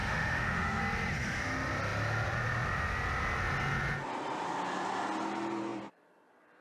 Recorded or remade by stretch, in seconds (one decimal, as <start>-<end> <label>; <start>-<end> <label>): 0.0-0.8 remade; 0.8-6.6 recorded